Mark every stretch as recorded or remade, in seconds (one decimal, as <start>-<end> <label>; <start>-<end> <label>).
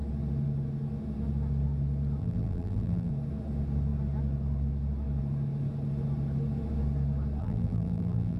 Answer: 0.0-2.2 recorded; 2.2-3.1 remade; 3.1-7.4 recorded; 7.4-8.4 remade